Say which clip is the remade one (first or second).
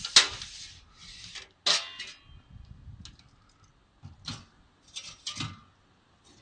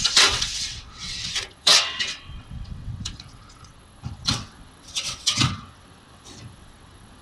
second